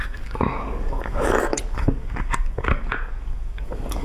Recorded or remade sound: remade